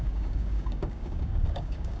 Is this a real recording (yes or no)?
no